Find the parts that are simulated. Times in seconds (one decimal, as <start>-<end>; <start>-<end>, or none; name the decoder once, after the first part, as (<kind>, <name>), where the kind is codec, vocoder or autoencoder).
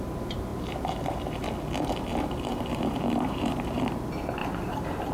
0.5-1.5 (vocoder, BigVGAN v2); 2.1-3.8; 4.4-5.1